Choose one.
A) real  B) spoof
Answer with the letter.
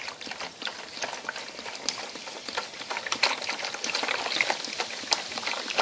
A